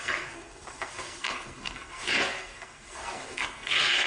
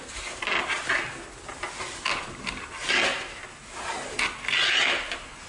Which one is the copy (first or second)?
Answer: first